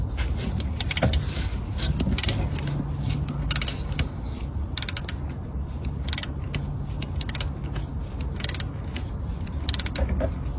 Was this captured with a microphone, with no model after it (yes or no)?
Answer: yes